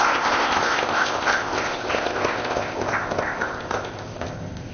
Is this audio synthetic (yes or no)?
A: yes